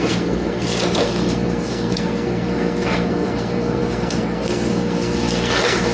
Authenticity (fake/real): fake